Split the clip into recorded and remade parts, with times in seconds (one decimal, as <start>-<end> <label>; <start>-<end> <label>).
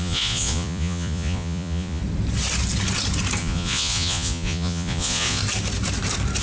0.0-2.0 remade; 2.0-3.4 recorded; 3.4-5.4 remade; 5.4-6.4 recorded